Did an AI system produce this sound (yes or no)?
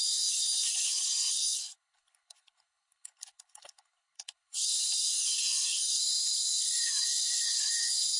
yes